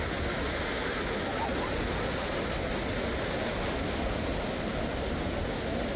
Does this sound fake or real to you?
real